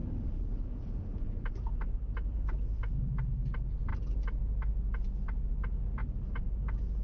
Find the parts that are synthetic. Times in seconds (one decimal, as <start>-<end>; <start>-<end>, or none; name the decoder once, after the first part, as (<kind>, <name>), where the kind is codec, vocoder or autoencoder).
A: 0.0-2.4 (vocoder, BigVGAN v2); 6.0-6.5